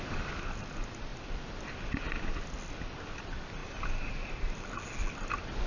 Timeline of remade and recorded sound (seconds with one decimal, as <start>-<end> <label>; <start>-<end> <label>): 0.0-5.7 recorded